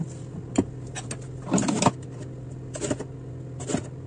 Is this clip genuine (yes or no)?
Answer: yes